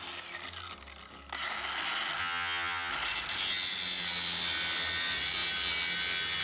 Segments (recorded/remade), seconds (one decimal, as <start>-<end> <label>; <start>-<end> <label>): 0.0-2.2 recorded; 2.2-2.9 remade; 2.9-6.4 recorded